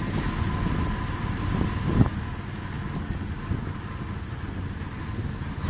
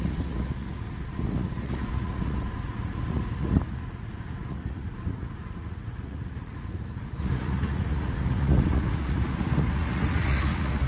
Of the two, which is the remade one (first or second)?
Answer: second